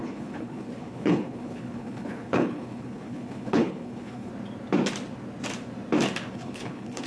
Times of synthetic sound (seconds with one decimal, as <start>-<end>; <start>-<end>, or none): 0.0-4.3; 6.3-7.1

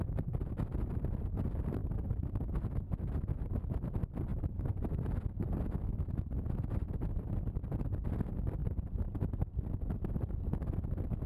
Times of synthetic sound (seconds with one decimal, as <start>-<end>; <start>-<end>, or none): none

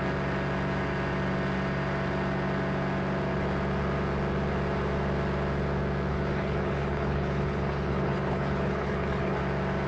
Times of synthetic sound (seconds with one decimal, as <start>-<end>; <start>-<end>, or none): 6.1-9.4

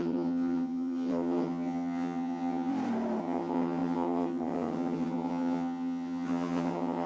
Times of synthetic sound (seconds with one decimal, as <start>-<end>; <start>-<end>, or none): 0.0-2.7; 3.2-7.1

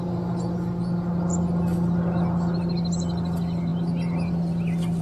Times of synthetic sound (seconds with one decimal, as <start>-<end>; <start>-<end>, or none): none

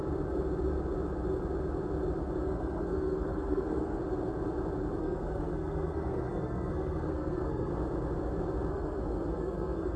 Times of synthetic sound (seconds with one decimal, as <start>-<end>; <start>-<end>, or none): 2.4-4.0; 5.0-7.7; 8.7-10.0

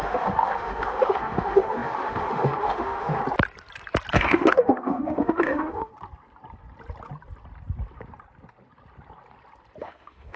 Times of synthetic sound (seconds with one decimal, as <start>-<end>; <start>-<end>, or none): 0.0-3.2; 4.1-5.9; 9.8-10.4

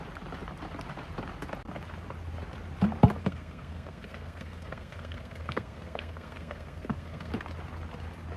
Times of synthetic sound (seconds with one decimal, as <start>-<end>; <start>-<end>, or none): 3.2-7.3